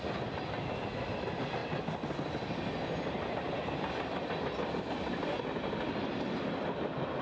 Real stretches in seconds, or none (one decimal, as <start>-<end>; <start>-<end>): 0.0-7.2

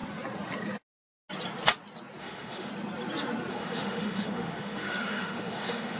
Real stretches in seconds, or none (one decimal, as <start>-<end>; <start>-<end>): 0.0-2.2; 2.7-3.5